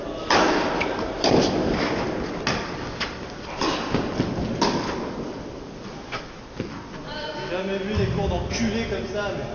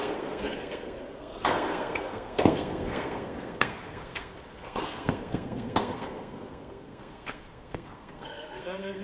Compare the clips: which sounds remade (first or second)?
second